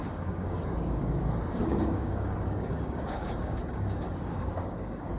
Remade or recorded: remade